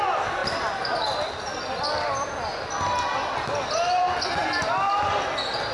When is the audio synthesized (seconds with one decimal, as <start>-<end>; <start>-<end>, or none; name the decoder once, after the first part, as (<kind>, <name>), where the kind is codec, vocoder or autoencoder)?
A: none